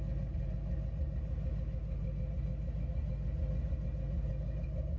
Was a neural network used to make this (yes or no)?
no